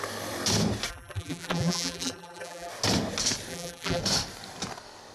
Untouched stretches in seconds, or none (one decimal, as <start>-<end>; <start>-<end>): 0.0-0.9; 2.7-3.5; 4.0-5.1